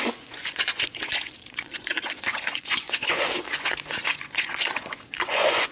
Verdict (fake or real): fake